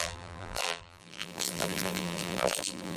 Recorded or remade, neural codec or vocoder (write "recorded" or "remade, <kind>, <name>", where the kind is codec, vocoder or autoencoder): remade, vocoder, BigVGAN v2